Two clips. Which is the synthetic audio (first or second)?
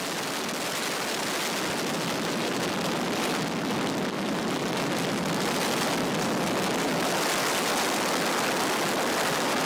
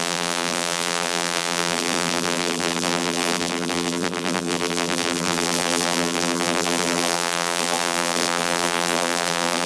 second